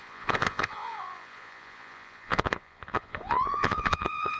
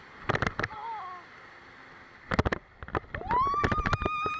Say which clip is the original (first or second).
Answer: second